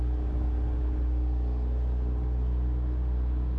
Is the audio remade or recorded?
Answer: recorded